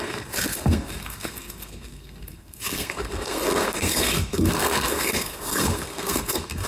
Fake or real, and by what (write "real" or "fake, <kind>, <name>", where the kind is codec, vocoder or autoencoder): fake, codec, SNAC